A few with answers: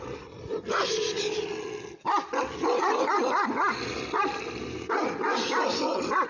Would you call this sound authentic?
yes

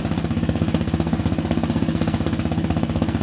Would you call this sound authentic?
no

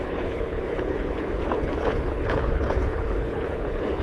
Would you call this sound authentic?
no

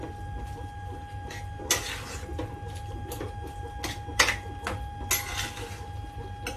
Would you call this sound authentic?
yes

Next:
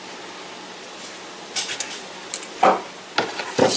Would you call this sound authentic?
yes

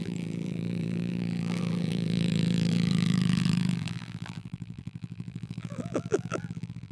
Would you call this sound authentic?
no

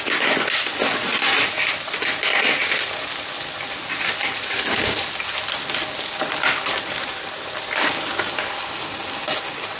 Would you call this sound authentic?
yes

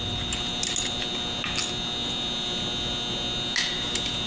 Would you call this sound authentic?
yes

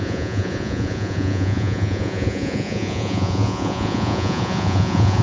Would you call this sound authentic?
no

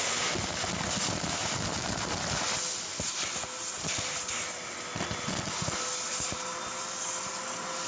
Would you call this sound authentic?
yes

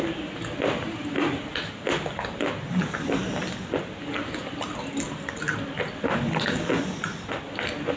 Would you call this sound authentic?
yes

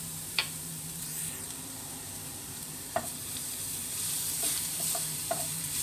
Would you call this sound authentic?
no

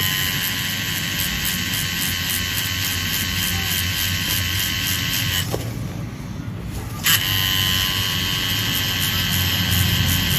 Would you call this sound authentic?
yes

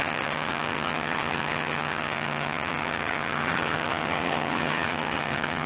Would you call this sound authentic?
no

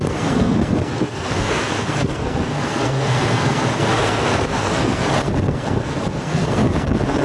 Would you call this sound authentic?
no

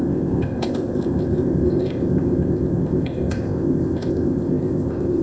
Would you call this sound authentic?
no